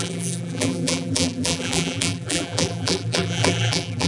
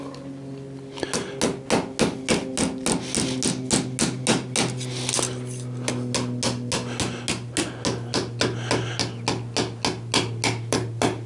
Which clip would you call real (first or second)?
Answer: second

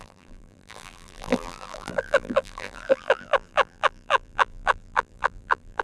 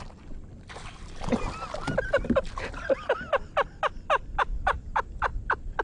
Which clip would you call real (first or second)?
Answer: second